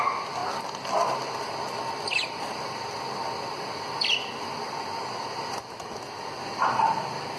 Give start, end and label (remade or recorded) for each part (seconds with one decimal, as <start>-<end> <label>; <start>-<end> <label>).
0.0-7.4 recorded